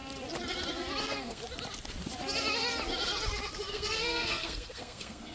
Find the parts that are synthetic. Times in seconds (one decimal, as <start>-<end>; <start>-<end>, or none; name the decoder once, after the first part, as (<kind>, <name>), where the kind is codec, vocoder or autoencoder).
1.0-1.4 (codec, SNAC); 3.7-5.3